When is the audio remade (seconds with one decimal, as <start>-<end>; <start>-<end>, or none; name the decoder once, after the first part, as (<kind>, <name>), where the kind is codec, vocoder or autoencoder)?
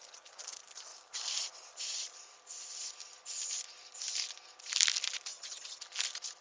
5.3-5.8 (vocoder, HiFi-GAN)